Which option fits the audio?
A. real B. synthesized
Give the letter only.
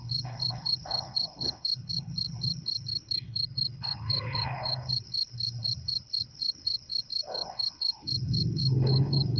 B